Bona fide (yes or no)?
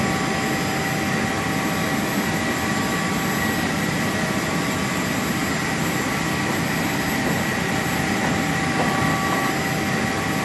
yes